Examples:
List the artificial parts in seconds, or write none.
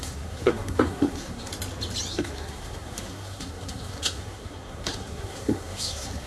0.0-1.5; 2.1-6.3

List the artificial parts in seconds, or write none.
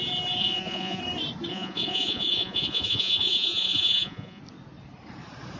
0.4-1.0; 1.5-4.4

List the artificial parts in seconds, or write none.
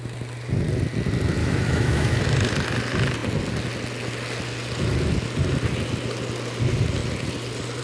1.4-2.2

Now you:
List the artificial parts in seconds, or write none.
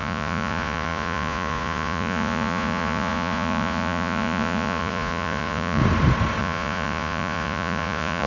0.0-5.8; 6.4-8.3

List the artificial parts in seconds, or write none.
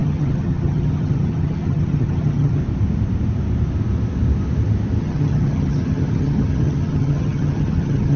0.0-2.6; 5.0-8.2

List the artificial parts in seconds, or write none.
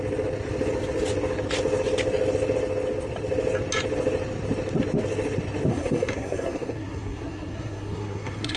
5.7-8.6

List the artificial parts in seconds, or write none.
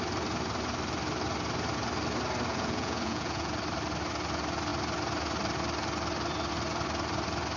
2.5-3.5